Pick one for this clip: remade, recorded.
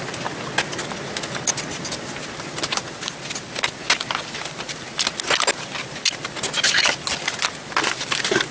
recorded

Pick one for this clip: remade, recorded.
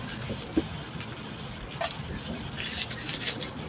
recorded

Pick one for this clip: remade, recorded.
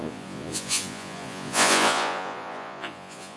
remade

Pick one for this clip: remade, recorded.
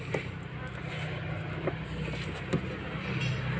recorded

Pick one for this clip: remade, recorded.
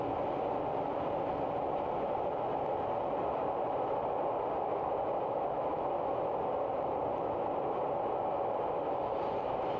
recorded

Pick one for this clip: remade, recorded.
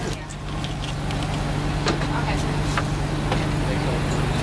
recorded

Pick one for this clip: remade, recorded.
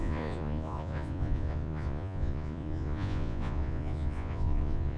remade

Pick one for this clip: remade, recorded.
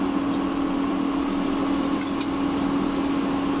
recorded